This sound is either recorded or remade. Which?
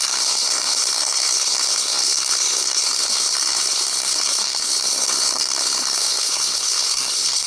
remade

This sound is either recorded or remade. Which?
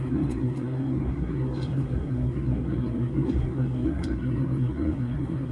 remade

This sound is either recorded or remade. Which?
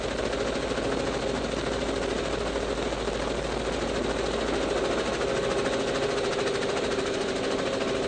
recorded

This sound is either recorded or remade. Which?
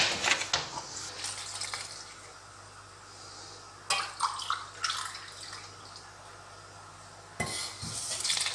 recorded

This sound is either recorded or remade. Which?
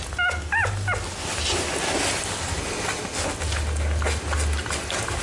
recorded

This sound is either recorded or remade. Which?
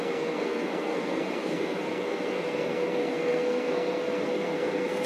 remade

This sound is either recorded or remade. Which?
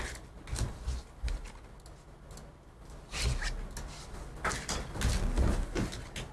recorded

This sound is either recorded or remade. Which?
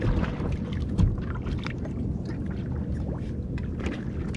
recorded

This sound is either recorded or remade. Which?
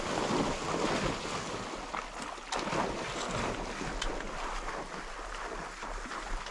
recorded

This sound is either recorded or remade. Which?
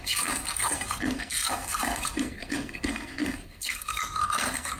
remade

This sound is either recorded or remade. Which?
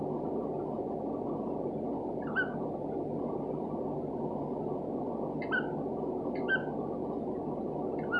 recorded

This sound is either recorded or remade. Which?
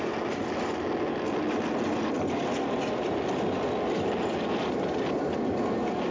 recorded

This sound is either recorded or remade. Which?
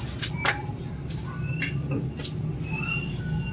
recorded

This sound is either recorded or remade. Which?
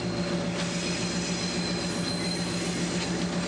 recorded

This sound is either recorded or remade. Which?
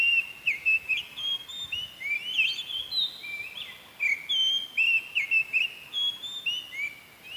recorded